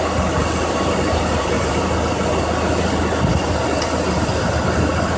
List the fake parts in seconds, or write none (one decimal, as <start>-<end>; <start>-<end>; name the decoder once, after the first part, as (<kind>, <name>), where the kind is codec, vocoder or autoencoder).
0.4-1.8 (vocoder, BigVGAN v2); 3.3-4.6